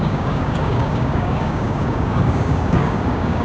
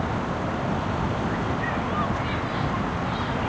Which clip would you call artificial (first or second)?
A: first